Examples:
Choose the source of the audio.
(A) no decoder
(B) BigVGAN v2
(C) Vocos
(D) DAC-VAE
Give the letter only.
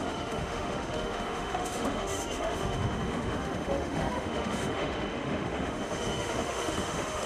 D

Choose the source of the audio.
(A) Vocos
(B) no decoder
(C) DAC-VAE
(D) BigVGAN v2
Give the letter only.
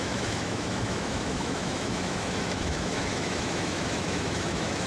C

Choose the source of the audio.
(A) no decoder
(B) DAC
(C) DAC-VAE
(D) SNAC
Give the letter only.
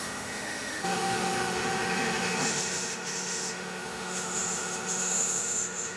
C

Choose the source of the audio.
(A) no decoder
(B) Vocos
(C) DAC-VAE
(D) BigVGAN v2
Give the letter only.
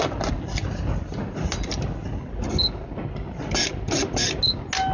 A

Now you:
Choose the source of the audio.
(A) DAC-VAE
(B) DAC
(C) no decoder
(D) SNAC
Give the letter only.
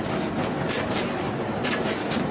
C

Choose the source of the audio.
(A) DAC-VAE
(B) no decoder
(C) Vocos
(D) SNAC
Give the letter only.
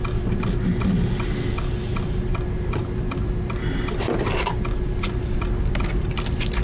B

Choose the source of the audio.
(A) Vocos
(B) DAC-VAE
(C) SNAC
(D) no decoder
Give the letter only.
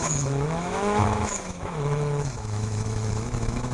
B